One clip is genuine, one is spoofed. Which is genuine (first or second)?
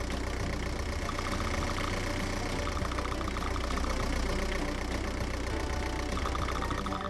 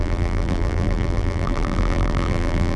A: first